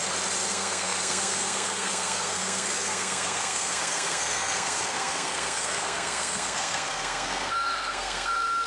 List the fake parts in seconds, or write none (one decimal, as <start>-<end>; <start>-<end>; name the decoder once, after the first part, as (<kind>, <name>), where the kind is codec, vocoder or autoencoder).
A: 0.5-8.7 (codec, SNAC)